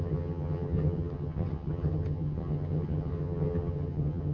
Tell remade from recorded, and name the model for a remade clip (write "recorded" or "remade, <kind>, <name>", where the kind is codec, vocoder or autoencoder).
remade, vocoder, HiFi-GAN